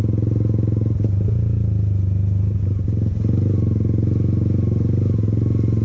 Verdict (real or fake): real